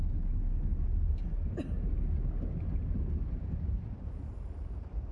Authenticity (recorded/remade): recorded